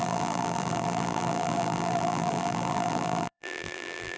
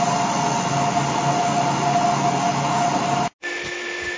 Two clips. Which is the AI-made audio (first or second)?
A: first